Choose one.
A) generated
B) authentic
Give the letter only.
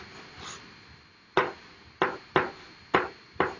B